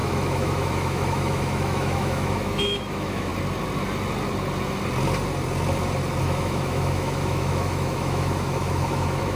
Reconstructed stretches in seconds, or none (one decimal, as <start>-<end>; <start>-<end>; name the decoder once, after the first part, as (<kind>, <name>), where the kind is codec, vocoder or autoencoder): 0.0-3.3 (autoencoder, DAC-VAE); 6.2-9.4